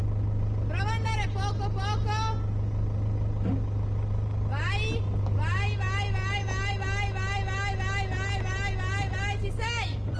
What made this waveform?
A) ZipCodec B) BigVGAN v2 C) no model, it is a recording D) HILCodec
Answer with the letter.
C